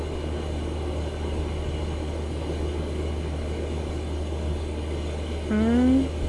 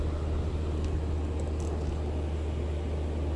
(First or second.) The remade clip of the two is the first